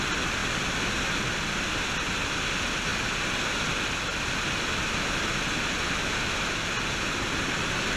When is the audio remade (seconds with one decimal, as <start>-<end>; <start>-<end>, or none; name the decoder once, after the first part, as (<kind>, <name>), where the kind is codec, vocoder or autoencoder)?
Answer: none

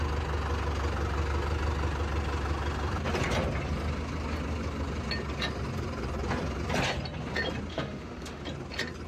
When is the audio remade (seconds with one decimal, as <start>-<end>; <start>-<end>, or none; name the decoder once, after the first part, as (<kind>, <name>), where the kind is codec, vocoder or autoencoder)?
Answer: 7.7-8.4 (autoencoder, DAC-VAE)